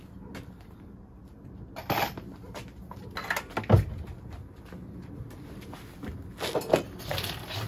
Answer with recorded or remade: recorded